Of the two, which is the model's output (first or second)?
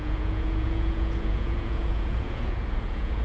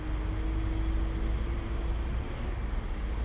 first